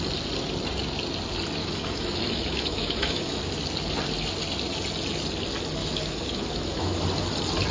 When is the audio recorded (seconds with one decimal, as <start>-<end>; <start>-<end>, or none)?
0.0-1.6; 3.4-5.8; 7.0-7.7

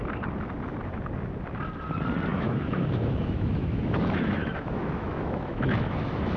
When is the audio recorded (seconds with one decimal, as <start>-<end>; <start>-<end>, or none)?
0.0-2.3

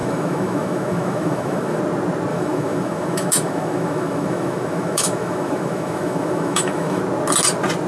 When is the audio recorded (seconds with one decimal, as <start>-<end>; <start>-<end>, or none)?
1.8-2.3; 7.0-7.9

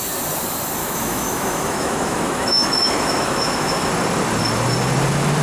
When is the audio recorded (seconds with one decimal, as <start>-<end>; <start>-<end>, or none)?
0.0-0.8; 3.9-5.4